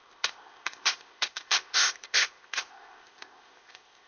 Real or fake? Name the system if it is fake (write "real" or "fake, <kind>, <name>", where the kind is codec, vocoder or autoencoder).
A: fake, codec, ZipCodec